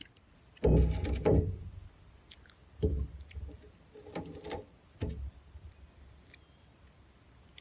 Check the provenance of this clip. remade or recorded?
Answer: recorded